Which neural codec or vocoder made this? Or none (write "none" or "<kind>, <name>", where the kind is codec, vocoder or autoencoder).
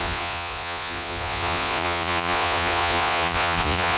vocoder, Vocos